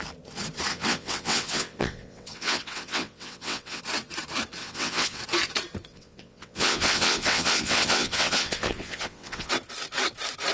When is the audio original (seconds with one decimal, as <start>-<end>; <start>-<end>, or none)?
0.0-0.7; 3.8-4.6; 5.2-5.9; 9.5-10.5